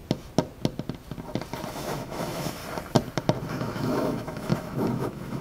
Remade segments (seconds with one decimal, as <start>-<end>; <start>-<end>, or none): 1.7-2.6; 3.5-5.4